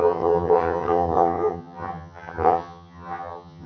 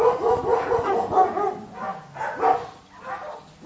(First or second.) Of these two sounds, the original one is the second